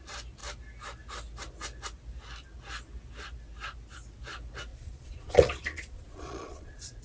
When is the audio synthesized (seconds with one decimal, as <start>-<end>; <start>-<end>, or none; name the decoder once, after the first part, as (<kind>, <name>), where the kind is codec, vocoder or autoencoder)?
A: 4.7-7.0 (vocoder, Vocos)